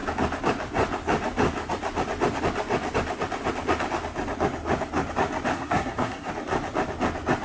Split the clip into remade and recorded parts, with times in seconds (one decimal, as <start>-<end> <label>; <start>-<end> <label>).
0.0-5.5 recorded; 5.5-6.3 remade; 6.3-7.4 recorded